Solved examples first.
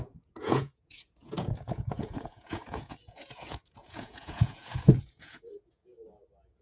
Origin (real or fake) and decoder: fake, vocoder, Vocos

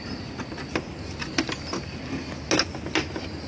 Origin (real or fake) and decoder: real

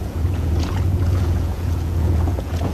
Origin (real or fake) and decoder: fake, vocoder, Vocos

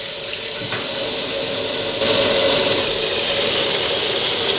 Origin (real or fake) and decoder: real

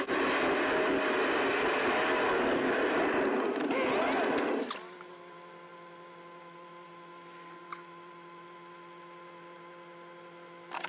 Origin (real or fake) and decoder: real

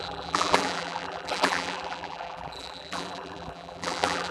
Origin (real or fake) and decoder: fake, vocoder, BigVGAN v2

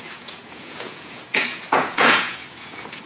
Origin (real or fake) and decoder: fake, vocoder, Vocos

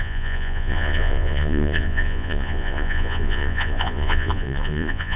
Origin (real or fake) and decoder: fake, vocoder, Vocos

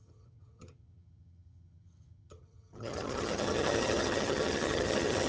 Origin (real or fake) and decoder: fake, vocoder, HiFi-GAN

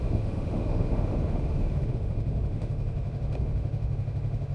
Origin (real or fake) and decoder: fake, autoencoder, DAC-VAE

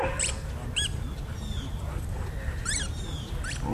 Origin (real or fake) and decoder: real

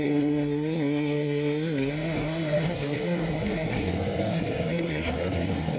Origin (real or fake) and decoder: fake, codec, SNAC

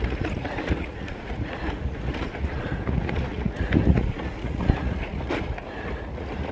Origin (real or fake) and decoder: fake, vocoder, Vocos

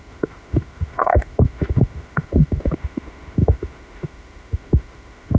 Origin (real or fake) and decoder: fake, autoencoder, DAC-VAE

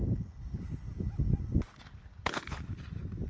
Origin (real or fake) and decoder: real